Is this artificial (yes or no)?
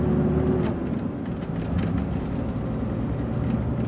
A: no